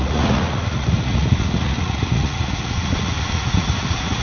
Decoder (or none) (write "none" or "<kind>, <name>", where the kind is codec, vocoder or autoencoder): vocoder, Vocos